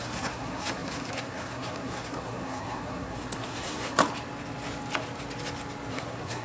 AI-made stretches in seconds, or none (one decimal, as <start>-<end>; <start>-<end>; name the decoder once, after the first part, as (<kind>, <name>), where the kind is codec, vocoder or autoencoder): 0.0-4.0 (codec, SNAC); 5.9-6.4